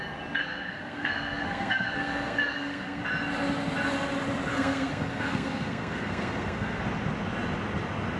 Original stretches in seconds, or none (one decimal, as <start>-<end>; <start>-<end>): 0.0-0.4; 3.0-4.5; 6.8-8.2